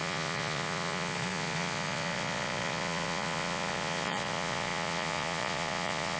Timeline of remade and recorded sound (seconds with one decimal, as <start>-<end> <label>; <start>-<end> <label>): 0.0-6.2 remade